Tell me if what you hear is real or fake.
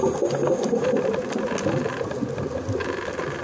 real